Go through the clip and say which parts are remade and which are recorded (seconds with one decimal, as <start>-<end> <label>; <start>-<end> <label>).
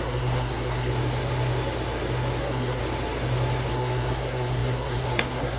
0.0-0.9 remade; 0.9-2.4 recorded; 2.4-2.8 remade; 2.8-3.7 recorded; 3.7-5.6 remade